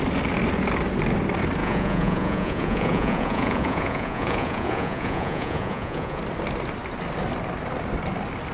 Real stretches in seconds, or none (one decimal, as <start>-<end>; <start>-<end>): 0.0-1.6; 6.2-8.5

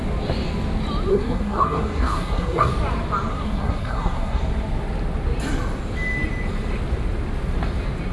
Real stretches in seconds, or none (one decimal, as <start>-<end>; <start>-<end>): 0.0-1.1; 2.7-3.3; 4.4-8.1

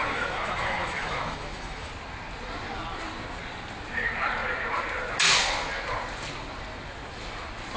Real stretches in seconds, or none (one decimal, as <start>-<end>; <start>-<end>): 1.9-7.8

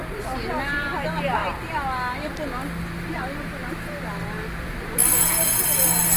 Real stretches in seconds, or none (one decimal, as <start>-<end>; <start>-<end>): 0.0-6.2

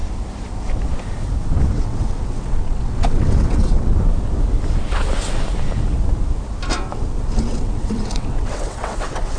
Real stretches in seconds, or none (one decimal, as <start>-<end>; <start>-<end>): 0.0-1.7; 3.9-7.4